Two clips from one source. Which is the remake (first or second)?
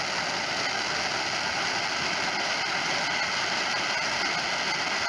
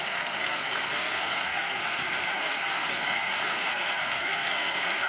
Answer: second